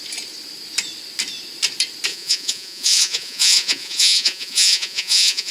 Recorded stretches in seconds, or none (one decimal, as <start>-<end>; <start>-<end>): 0.0-2.1